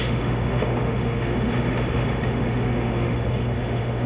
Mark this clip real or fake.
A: fake